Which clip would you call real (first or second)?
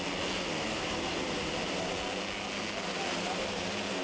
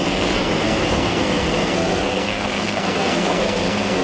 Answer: first